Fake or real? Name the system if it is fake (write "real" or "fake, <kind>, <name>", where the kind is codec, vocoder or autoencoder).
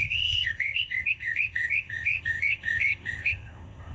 fake, codec, ZipCodec